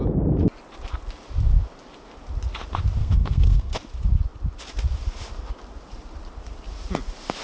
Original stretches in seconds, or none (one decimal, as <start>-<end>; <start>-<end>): 0.0-3.0; 3.7-7.4